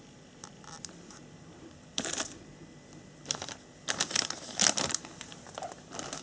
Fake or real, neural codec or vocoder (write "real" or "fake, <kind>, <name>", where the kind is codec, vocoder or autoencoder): fake, vocoder, BigVGAN v2